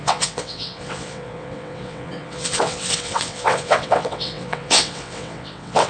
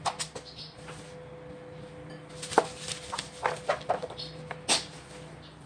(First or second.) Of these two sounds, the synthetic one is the first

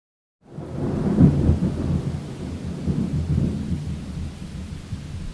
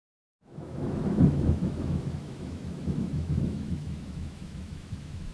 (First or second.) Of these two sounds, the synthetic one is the second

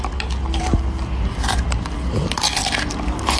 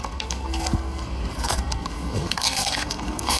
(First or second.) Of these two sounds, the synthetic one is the second